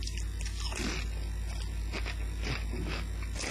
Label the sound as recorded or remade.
recorded